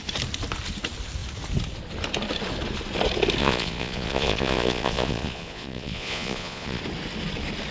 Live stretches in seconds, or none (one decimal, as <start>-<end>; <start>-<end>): 0.0-3.4; 6.8-7.7